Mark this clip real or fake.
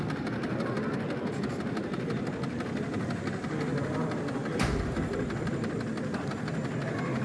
real